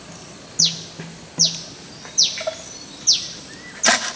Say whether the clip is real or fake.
real